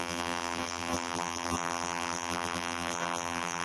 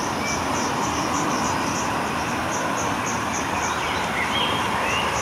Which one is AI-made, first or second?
first